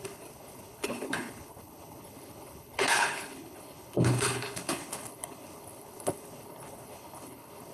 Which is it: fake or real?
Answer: fake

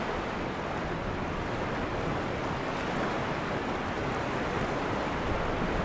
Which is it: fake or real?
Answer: real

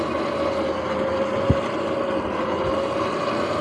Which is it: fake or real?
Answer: real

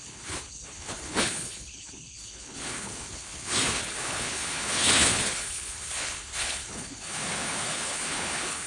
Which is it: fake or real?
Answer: fake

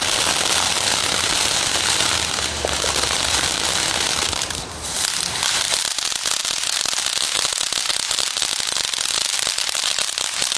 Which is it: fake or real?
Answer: real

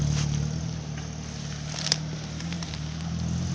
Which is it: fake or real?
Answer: real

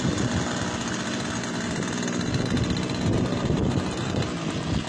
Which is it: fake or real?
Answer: real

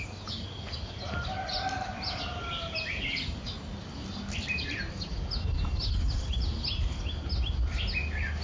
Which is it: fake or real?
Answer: real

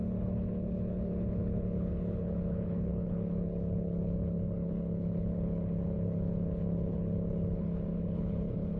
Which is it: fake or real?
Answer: fake